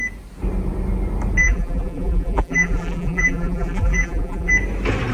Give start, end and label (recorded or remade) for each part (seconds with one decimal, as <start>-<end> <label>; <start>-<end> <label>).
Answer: 0.0-1.4 recorded; 1.4-4.5 remade; 4.5-5.1 recorded